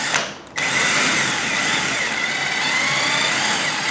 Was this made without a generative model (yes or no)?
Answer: yes